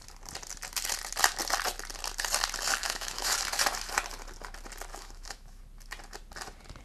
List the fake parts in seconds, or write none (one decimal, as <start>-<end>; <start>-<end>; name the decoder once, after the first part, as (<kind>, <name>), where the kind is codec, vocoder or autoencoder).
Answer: 2.8-3.3 (autoencoder, DAC-VAE); 4.9-5.6